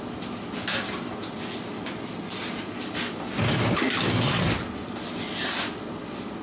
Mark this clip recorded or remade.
recorded